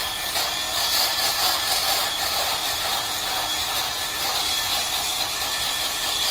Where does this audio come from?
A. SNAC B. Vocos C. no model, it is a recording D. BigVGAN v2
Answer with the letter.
C